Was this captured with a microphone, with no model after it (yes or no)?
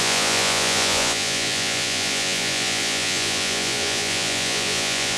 no